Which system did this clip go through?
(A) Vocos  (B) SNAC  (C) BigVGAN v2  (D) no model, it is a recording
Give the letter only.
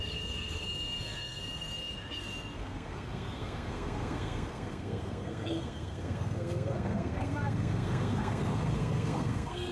B